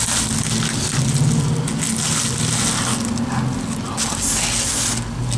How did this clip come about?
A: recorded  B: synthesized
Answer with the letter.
A